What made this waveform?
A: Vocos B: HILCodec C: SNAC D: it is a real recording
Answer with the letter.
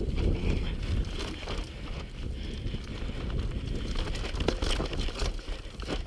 D